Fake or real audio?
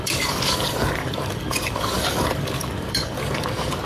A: fake